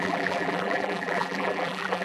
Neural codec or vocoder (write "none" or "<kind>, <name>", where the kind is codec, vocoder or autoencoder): vocoder, BigVGAN v2